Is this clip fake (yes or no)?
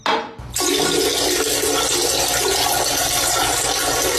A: no